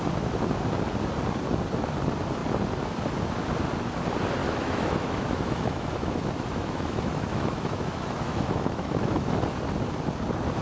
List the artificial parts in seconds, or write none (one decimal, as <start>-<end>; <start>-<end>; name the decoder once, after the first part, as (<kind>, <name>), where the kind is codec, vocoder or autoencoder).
4.4-9.4 (autoencoder, DAC-VAE)